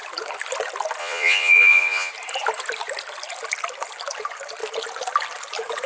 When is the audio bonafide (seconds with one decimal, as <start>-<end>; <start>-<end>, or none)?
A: 0.0-1.0; 2.1-5.9

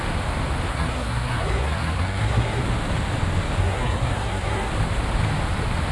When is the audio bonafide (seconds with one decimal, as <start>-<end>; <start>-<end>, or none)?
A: 0.0-0.7; 2.6-3.6; 4.7-5.9

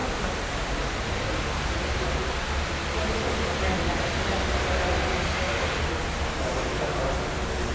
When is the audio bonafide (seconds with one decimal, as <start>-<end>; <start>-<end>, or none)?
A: 0.0-7.7

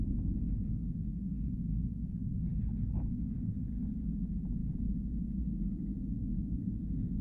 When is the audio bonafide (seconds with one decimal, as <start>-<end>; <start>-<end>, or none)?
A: 0.0-7.2

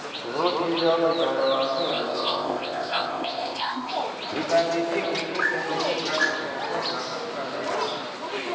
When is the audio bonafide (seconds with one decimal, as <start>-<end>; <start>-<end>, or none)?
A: 0.0-1.9; 3.9-8.5

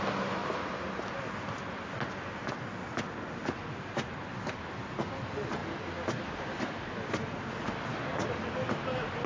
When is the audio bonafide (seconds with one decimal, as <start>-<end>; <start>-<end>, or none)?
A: 0.0-9.3